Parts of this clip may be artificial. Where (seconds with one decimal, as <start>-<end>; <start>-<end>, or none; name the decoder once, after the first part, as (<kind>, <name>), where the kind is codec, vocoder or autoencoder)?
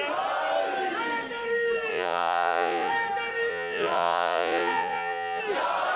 1.9-2.9 (vocoder, Vocos); 3.5-5.4